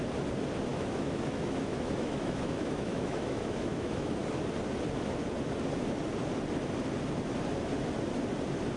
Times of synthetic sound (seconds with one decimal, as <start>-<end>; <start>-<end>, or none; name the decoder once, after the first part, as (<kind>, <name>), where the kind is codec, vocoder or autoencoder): 0.7-4.1 (autoencoder, DAC-VAE)